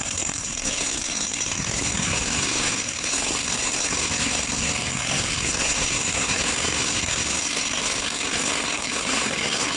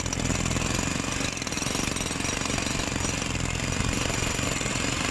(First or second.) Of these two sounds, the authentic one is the second